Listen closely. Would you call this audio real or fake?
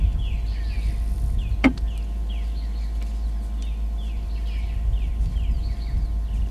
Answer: real